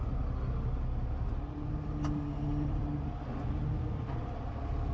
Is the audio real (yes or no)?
yes